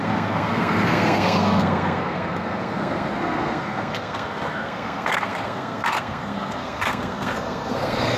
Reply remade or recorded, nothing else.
remade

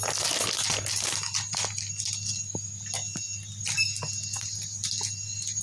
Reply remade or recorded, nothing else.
recorded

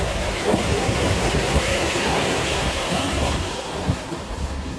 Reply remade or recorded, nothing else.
remade